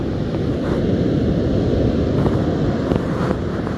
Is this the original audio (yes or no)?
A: yes